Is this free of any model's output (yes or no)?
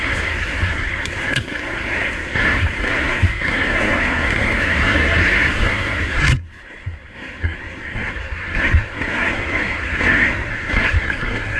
no